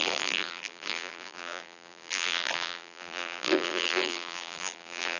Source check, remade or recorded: remade